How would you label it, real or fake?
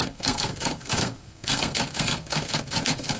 fake